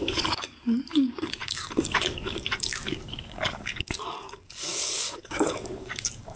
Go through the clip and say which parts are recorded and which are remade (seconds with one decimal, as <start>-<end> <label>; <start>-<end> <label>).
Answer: 0.0-6.4 remade